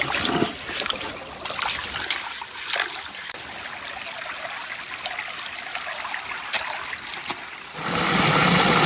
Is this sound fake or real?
real